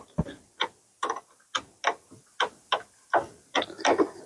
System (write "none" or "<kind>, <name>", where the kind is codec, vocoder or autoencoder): none